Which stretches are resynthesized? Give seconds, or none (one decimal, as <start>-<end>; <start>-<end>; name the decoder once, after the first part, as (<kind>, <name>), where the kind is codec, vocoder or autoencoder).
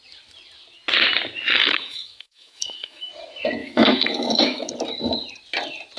1.6-3.1 (autoencoder, DAC-VAE); 3.6-4.7